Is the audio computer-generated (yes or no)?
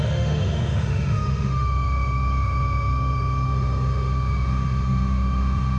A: yes